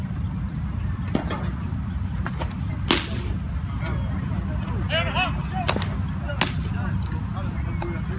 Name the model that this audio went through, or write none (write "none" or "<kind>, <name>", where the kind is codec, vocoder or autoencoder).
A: none